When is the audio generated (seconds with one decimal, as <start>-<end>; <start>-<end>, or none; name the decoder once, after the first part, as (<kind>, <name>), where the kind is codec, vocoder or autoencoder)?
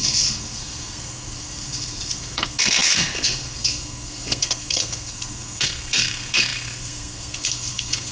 0.0-8.1 (codec, SNAC)